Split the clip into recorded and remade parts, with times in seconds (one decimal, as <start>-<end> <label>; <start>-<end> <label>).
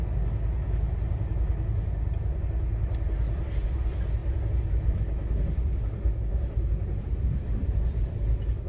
0.0-8.7 recorded